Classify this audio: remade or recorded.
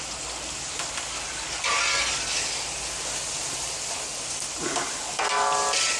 recorded